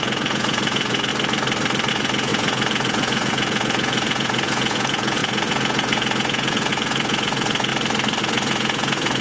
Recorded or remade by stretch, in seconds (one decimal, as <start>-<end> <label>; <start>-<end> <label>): 0.0-1.1 remade; 1.1-1.9 recorded; 1.9-7.7 remade; 7.7-8.2 recorded; 8.2-9.2 remade